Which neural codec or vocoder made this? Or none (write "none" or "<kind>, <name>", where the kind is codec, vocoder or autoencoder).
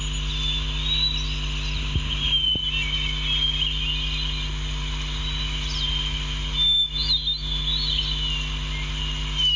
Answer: none